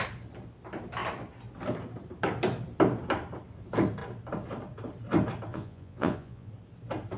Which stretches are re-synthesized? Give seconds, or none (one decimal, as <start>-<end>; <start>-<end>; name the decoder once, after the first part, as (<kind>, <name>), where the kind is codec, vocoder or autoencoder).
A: 5.5-6.5 (vocoder, Vocos)